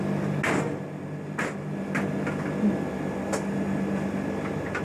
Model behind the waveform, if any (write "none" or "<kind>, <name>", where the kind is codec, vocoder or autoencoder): none